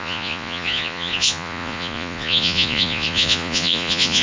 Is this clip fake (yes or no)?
yes